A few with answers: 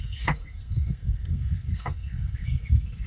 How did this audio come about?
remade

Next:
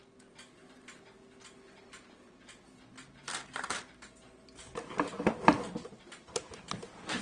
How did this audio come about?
recorded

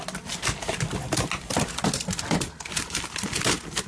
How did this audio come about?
recorded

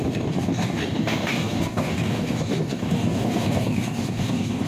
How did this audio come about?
remade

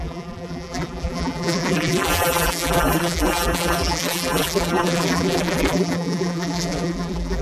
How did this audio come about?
remade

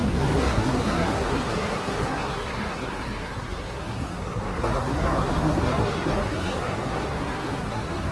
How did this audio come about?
remade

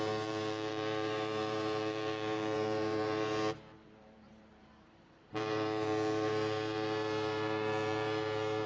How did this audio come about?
remade